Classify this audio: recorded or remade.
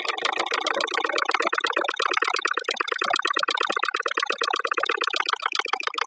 recorded